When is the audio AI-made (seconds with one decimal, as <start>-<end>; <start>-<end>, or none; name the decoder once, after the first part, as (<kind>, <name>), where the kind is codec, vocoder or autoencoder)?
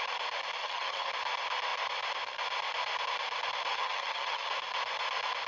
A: 0.6-1.1 (vocoder, HiFi-GAN); 3.7-4.5